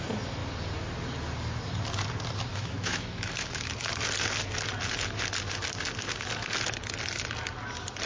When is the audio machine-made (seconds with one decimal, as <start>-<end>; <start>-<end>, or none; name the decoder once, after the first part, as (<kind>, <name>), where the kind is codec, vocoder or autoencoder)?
2.5-3.9 (autoencoder, DAC-VAE)